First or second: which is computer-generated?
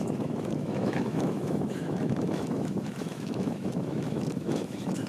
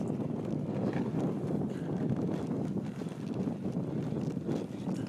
first